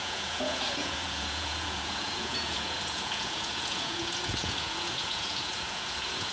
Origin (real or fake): fake